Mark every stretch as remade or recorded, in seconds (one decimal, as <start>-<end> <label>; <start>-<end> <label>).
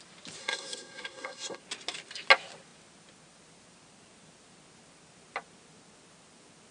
0.0-0.4 recorded; 0.4-1.6 remade; 1.6-6.7 recorded